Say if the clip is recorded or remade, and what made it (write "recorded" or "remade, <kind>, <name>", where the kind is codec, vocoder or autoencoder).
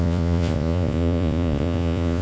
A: remade, vocoder, Vocos